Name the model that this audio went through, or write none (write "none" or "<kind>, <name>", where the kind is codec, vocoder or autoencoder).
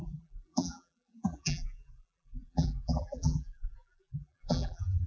vocoder, BigVGAN v2